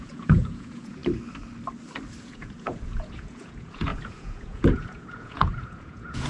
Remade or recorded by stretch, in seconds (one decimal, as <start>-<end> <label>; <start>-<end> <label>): 0.0-1.0 remade; 1.0-2.2 recorded; 2.2-6.3 remade